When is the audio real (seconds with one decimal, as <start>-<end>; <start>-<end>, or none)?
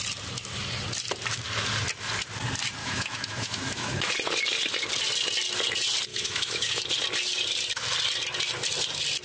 0.0-2.8; 4.1-6.1; 6.8-9.2